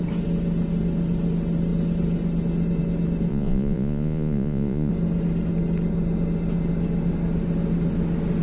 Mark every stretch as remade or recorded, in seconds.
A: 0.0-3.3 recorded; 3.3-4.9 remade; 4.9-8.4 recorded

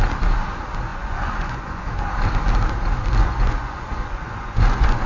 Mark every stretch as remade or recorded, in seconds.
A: 0.0-0.9 recorded; 0.9-1.8 remade; 1.8-3.2 recorded; 3.2-5.1 remade

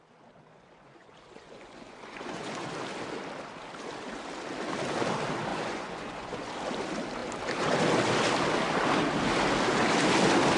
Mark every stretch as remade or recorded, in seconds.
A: 0.0-0.5 recorded; 0.5-2.7 remade; 2.7-5.5 recorded; 5.5-6.5 remade; 6.5-10.6 recorded

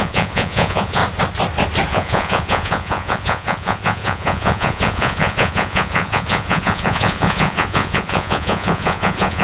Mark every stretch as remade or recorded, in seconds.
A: 0.0-1.0 remade; 1.0-1.9 recorded; 1.9-9.4 remade

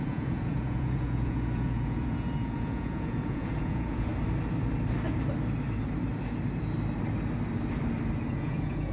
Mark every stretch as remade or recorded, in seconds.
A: 0.0-4.1 remade; 4.1-8.3 recorded; 8.3-8.9 remade

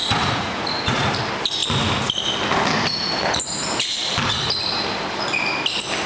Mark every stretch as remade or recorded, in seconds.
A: 0.0-1.1 remade; 1.1-6.1 recorded